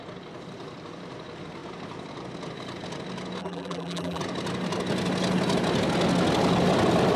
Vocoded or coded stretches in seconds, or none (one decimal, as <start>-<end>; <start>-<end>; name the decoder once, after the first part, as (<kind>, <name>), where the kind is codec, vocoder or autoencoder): 3.4-4.2 (vocoder, BigVGAN v2)